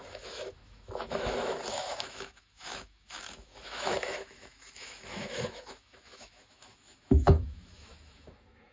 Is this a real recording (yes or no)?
no